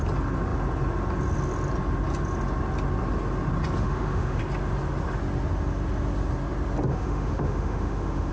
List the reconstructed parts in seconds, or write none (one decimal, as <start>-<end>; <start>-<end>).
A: 3.8-4.4; 6.9-8.3